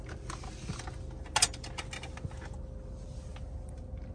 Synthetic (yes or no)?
no